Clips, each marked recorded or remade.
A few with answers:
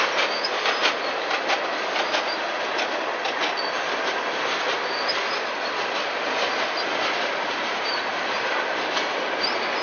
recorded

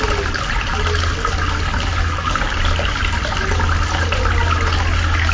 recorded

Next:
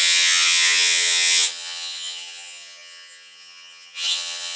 remade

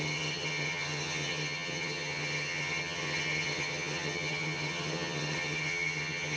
remade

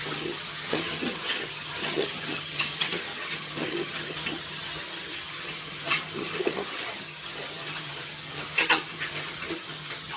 remade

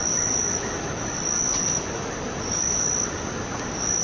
recorded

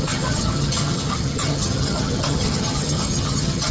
remade